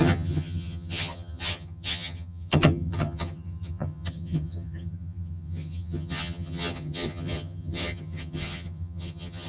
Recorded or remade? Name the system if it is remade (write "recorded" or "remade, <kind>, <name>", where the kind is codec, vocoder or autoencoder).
remade, vocoder, HiFi-GAN